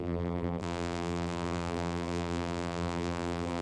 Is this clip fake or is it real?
fake